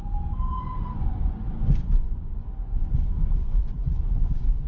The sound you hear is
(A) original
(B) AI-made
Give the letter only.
B